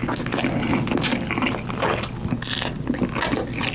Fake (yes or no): no